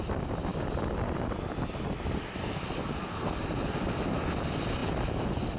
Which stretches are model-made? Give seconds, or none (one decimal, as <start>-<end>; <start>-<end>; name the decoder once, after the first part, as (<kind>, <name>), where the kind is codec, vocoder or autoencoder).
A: none